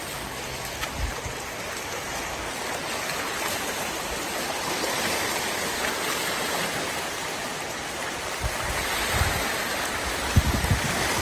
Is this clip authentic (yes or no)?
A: yes